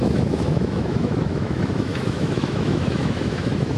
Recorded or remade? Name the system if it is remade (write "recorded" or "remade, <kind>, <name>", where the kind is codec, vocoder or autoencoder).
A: remade, autoencoder, DAC-VAE